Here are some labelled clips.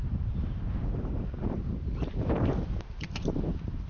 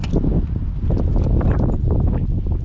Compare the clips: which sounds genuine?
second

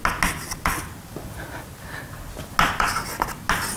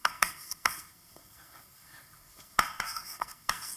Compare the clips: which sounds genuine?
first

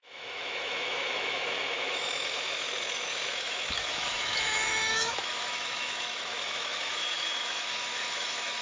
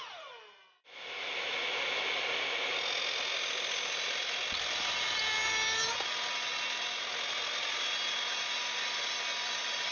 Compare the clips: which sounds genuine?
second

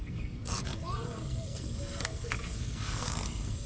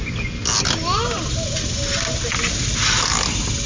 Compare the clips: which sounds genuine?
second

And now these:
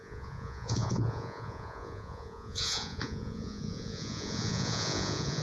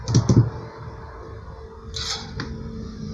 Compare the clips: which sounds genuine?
second